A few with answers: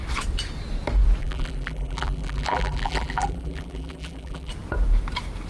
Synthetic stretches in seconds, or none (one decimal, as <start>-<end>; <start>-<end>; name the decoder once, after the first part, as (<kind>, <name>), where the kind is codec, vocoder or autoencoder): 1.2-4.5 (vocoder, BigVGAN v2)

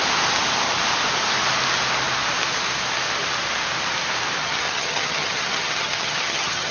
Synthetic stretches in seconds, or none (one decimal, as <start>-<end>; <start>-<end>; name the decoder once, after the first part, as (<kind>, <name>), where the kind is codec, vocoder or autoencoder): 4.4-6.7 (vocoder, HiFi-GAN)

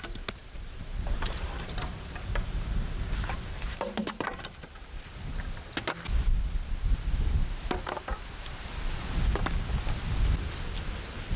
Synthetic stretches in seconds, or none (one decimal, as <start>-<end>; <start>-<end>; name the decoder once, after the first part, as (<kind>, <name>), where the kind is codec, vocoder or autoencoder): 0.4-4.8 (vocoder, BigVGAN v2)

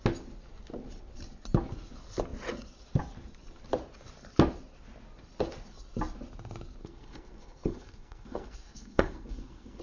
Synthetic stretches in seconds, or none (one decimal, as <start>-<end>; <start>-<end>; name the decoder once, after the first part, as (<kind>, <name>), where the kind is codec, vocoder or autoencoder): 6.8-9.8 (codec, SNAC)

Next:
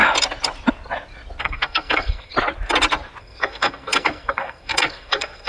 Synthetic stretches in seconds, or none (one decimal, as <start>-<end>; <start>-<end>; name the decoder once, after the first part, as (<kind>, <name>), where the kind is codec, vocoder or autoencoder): 1.4-2.3 (codec, SNAC); 3.2-5.5

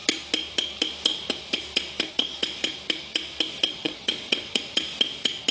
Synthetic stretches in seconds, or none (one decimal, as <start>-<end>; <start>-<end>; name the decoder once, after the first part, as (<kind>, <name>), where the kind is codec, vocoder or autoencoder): 3.7-4.6 (vocoder, WaveNeXt)